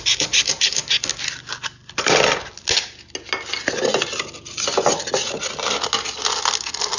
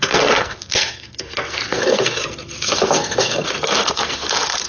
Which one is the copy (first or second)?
second